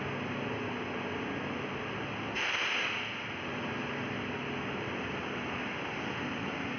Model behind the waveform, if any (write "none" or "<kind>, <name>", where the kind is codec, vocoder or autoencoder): none